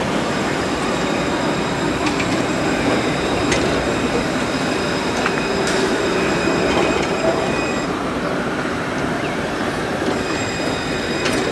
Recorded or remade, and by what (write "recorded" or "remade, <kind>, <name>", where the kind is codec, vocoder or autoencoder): remade, vocoder, BigVGAN v2